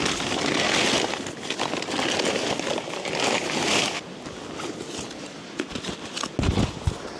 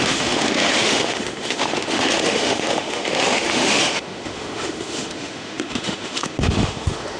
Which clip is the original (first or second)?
first